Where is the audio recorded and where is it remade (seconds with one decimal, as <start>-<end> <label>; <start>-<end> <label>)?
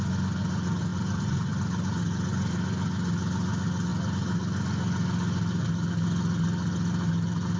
0.0-0.9 recorded; 0.9-1.5 remade; 1.5-3.9 recorded; 3.9-4.4 remade; 4.4-7.6 recorded